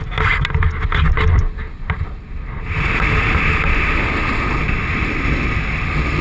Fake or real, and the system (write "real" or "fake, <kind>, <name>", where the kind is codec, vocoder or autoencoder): real